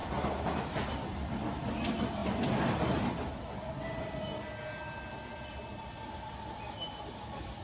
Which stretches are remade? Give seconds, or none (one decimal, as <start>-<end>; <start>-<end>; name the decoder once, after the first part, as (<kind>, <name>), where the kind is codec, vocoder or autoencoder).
none